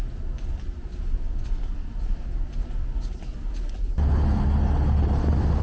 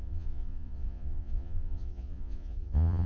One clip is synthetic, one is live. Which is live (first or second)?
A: first